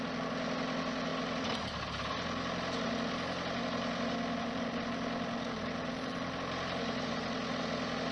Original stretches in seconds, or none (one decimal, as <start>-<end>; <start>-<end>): 0.0-1.1; 1.8-8.1